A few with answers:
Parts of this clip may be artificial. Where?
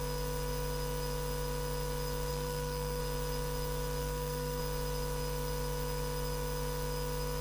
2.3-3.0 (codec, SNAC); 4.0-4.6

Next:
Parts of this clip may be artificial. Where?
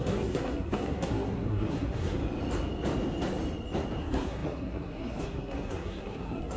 0.0-2.2 (codec, SNAC); 4.0-6.6